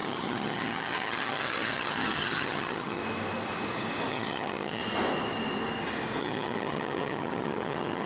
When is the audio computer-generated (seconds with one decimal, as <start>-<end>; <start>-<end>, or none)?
0.0-3.0; 4.1-4.8; 6.2-8.1